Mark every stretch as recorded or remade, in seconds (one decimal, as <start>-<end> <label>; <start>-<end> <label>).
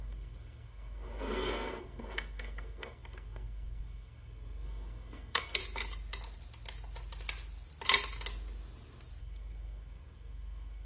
0.0-5.6 remade; 5.6-9.2 recorded; 9.2-10.8 remade